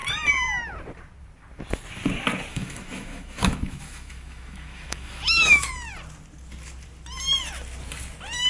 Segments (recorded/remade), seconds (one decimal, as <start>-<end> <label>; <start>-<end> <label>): 0.0-2.5 recorded; 2.5-5.7 remade; 5.7-8.5 recorded